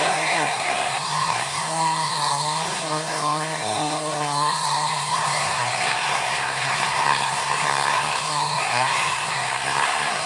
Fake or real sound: fake